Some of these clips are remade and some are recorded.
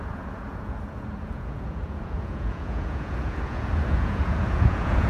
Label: remade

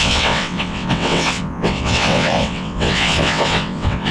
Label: remade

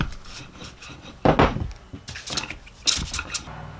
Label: recorded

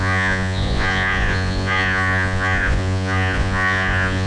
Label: remade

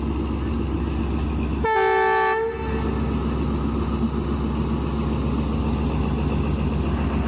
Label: recorded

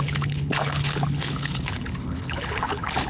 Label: remade